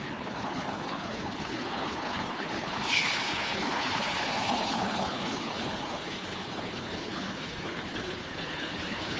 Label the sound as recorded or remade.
remade